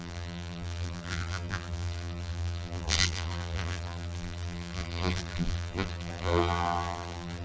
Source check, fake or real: fake